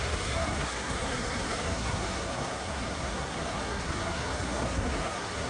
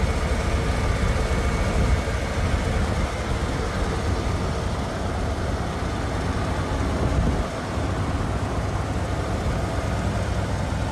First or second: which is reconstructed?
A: first